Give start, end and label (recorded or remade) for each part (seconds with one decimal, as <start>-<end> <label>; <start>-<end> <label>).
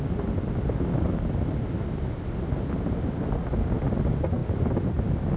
0.0-5.4 recorded